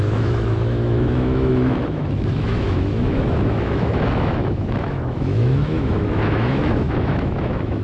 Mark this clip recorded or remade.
remade